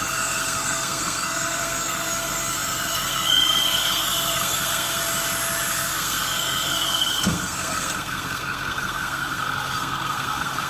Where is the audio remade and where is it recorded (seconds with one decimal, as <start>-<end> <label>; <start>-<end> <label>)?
0.0-5.0 remade; 5.0-5.7 recorded; 5.7-10.7 remade